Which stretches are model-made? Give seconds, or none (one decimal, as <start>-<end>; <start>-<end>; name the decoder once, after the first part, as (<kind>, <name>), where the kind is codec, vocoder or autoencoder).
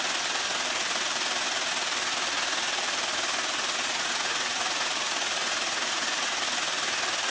3.9-6.3 (vocoder, Vocos)